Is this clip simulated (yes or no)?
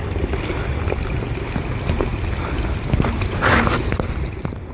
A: no